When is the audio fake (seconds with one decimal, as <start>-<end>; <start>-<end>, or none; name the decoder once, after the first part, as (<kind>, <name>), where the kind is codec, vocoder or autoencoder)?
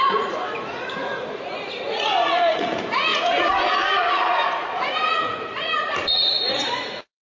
0.0-7.3 (vocoder, Vocos)